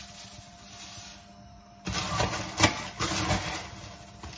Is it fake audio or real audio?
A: real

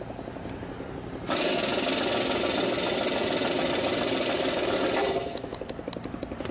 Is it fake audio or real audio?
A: real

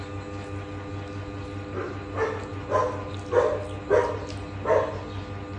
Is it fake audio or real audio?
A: real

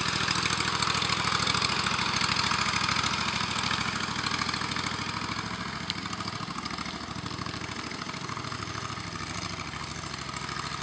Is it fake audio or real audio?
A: real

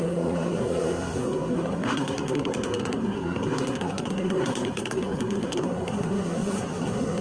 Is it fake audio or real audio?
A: fake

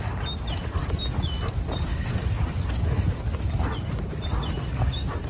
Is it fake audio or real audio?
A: real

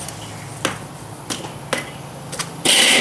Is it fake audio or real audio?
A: real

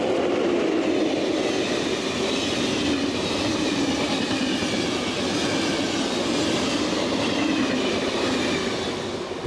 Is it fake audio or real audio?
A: real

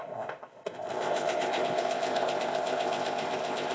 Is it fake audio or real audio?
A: fake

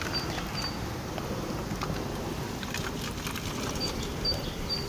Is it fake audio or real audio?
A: real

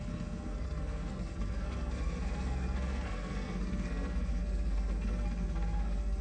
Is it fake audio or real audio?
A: fake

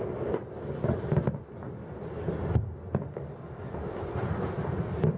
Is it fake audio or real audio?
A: real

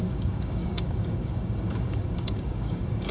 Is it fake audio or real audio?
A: fake